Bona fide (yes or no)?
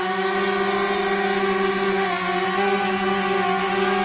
yes